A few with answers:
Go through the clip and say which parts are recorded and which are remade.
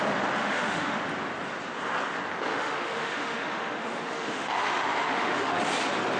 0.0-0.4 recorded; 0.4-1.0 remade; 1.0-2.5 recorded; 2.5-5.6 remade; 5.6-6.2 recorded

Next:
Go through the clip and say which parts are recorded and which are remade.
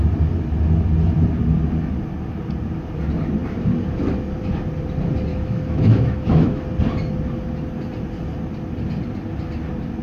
0.0-5.3 recorded; 5.3-6.6 remade; 6.6-10.0 recorded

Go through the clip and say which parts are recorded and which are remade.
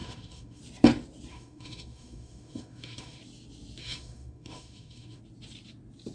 0.0-0.6 remade; 0.6-1.3 recorded; 1.3-3.2 remade; 3.2-3.8 recorded; 3.8-5.2 remade; 5.2-6.1 recorded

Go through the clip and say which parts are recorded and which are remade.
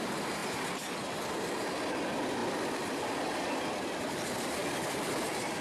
0.0-0.4 recorded; 0.4-1.9 remade; 1.9-2.4 recorded; 2.4-4.1 remade; 4.1-4.6 recorded; 4.6-5.6 remade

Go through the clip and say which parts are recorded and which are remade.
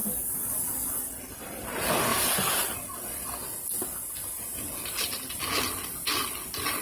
0.0-2.1 recorded; 2.1-2.6 remade; 2.6-6.8 recorded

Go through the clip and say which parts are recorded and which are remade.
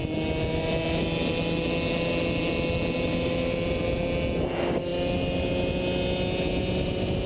0.0-7.3 recorded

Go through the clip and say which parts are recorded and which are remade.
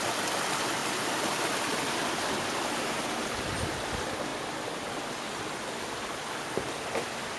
0.0-7.4 recorded